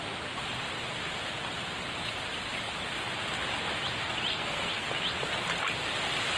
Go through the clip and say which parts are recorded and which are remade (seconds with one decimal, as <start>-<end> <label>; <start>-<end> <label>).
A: 0.0-4.3 recorded; 4.3-4.9 remade; 4.9-6.4 recorded